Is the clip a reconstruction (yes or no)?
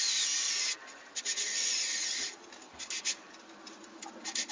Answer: no